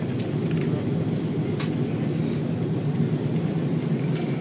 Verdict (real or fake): real